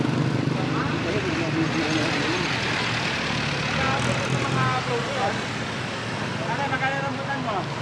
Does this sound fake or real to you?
real